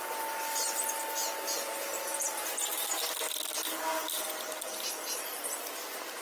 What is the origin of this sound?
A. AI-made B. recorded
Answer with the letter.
B